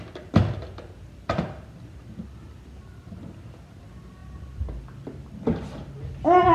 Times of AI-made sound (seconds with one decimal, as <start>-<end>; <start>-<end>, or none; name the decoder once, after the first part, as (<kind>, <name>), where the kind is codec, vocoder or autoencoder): none